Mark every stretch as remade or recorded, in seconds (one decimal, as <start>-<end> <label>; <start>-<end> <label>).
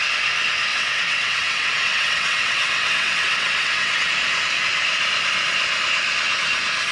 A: 0.0-0.7 recorded; 0.7-4.1 remade; 4.1-6.9 recorded